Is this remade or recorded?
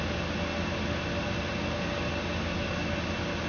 recorded